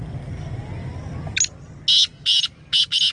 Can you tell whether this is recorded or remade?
recorded